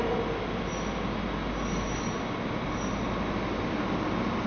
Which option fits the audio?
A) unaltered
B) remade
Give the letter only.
A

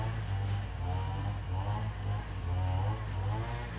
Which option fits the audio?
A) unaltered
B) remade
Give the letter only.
A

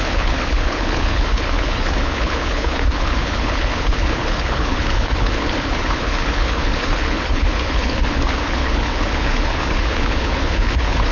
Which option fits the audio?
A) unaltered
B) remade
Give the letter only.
B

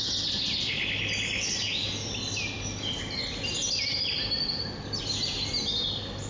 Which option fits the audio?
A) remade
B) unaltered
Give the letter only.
B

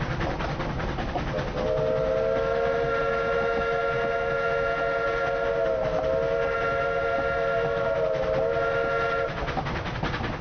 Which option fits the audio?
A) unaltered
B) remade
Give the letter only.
A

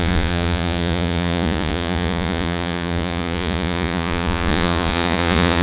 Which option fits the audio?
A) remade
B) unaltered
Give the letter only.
A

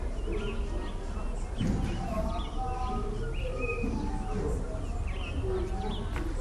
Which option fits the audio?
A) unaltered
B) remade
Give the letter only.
A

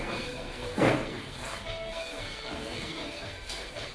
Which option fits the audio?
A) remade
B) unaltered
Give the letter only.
A